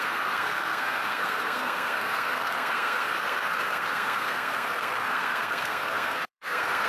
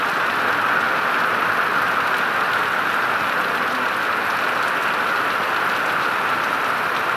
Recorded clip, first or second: second